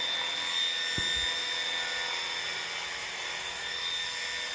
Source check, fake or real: real